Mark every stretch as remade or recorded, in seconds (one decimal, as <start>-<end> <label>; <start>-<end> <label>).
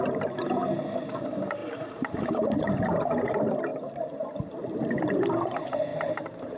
0.0-1.6 recorded; 1.6-2.3 remade; 2.3-3.7 recorded; 3.7-4.3 remade; 4.3-5.9 recorded; 5.9-6.6 remade